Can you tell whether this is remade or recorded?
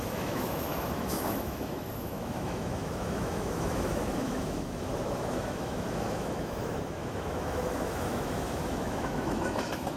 remade